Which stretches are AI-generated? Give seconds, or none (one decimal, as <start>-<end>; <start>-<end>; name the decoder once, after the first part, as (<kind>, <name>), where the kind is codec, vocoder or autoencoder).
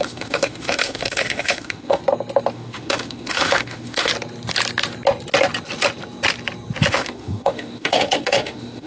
0.0-2.0 (autoencoder, DAC-VAE); 2.5-4.1; 6.9-8.9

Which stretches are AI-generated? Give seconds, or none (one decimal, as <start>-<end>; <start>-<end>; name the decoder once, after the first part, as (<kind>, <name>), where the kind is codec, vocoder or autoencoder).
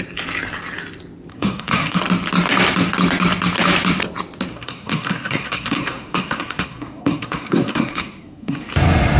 1.3-2.0 (codec, SNAC); 4.5-8.7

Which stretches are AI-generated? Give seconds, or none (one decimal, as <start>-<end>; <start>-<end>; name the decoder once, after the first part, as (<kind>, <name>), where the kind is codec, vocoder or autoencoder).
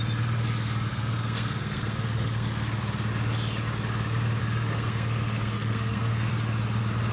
0.9-2.8 (codec, SNAC); 4.4-6.3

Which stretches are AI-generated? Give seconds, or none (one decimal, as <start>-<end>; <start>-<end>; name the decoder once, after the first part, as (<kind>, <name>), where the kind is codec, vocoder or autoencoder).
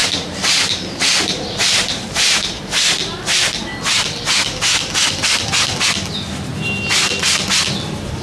0.0-2.6 (vocoder, BigVGAN v2)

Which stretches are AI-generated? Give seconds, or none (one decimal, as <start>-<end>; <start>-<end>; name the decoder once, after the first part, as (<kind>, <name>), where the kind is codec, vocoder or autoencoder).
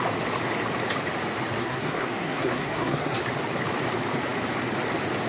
1.6-3.2 (codec, SNAC)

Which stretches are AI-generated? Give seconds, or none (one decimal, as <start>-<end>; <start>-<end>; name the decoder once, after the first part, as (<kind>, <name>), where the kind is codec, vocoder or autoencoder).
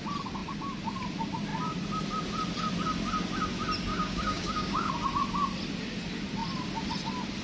3.9-4.9 (codec, DAC)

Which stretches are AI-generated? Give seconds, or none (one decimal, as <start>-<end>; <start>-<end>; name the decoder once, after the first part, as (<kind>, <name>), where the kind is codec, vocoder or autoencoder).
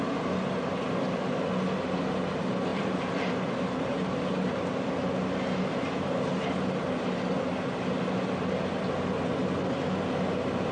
2.7-3.3 (vocoder, BigVGAN v2)